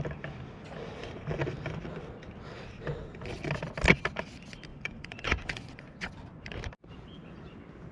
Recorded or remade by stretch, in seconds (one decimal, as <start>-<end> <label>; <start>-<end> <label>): 0.0-4.7 recorded; 4.7-6.1 remade; 6.1-7.9 recorded